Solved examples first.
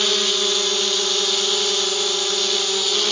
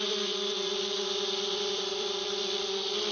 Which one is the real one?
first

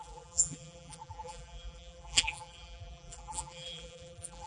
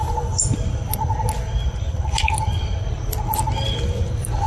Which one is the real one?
second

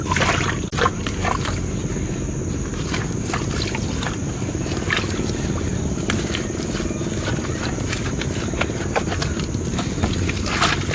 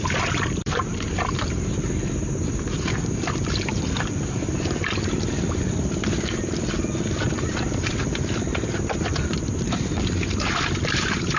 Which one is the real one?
first